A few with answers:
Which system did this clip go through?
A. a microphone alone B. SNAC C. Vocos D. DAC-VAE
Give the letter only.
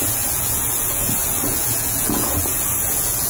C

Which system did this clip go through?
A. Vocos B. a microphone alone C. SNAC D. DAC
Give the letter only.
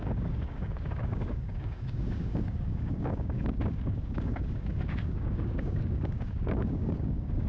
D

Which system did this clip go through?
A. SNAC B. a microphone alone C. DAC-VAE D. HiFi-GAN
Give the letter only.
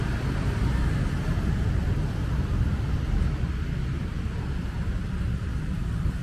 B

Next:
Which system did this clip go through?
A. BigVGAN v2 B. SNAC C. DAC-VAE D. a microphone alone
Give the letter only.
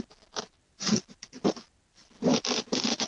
A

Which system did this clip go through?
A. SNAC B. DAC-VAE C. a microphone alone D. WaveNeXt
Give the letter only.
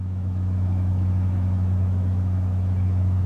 B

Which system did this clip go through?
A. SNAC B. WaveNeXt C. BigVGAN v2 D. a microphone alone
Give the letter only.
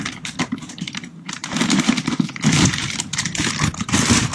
C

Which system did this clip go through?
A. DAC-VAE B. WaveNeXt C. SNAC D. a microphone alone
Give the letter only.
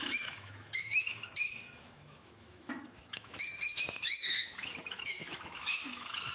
A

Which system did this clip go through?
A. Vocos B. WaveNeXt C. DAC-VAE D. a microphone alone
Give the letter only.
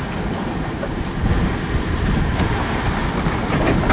D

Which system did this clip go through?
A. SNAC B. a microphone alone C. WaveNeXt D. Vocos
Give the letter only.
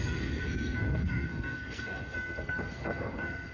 A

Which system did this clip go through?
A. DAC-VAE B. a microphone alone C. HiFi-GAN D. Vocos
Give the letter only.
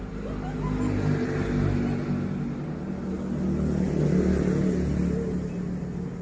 B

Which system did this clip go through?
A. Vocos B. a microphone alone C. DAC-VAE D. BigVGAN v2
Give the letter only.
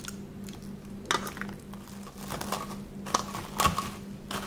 B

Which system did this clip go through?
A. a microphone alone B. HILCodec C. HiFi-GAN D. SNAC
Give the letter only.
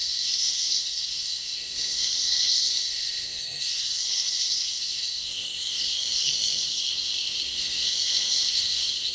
D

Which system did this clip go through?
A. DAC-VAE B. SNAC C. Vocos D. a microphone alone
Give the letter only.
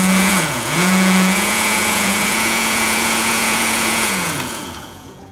C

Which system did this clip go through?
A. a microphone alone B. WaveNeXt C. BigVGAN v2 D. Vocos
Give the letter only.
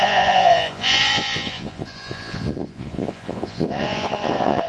D